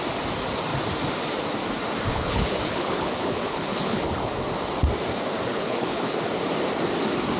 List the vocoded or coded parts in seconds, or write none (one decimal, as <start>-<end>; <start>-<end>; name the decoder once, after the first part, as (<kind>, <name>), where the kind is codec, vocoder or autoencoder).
2.1-4.3 (codec, HILCodec); 5.5-6.2